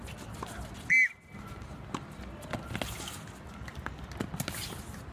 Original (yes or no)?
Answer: yes